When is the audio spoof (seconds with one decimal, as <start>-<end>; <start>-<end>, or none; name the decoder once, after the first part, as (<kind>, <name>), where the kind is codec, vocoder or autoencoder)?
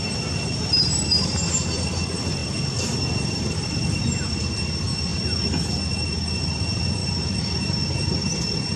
none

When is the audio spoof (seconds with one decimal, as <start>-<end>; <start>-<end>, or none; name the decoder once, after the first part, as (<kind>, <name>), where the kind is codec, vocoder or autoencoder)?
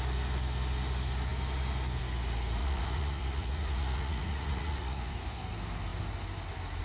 2.6-5.1 (vocoder, Vocos)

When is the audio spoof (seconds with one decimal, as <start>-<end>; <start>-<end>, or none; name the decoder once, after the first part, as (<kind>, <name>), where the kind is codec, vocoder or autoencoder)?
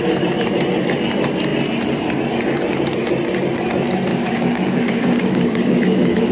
4.1-6.3 (codec, DAC)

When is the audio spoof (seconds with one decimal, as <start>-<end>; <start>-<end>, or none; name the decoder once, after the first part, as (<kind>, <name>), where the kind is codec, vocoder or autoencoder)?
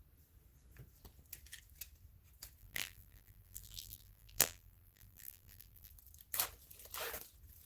2.6-5.9 (vocoder, BigVGAN v2)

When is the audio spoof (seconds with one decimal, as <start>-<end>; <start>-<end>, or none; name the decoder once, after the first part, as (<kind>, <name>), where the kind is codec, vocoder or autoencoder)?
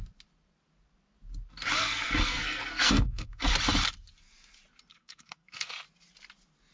1.8-3.5 (codec, SNAC); 4.9-5.7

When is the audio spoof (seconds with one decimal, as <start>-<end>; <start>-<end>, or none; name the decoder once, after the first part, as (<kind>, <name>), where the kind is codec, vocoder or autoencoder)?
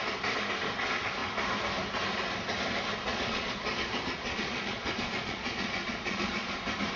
3.1-6.6 (vocoder, Vocos)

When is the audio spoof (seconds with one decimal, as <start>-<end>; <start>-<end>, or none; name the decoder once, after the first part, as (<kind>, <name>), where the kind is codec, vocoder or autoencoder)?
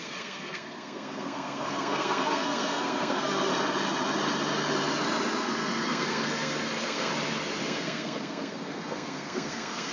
0.0-3.5 (codec, SNAC); 5.4-7.1; 7.6-9.9